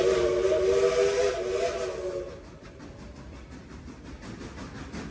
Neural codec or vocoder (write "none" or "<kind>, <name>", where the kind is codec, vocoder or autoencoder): none